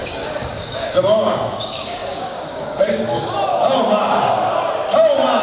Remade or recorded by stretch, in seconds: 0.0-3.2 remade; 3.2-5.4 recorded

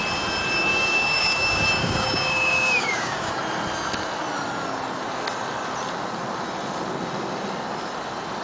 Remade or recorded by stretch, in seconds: 0.0-0.7 recorded; 0.7-3.3 remade; 3.3-8.4 recorded

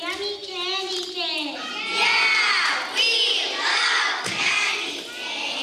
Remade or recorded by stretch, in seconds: 0.0-3.7 recorded; 3.7-4.7 remade; 4.7-5.6 recorded

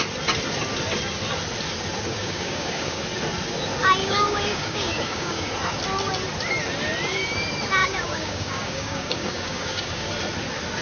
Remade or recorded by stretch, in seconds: 0.0-2.1 recorded; 2.1-3.0 remade; 3.0-4.0 recorded; 4.0-5.5 remade; 5.5-7.8 recorded; 7.8-10.1 remade; 10.1-10.8 recorded